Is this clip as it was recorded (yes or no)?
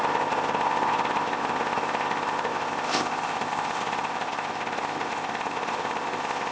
no